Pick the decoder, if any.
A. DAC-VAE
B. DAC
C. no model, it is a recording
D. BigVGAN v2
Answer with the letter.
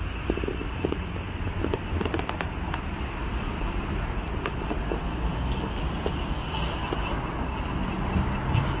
C